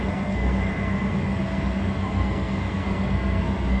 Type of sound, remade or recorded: remade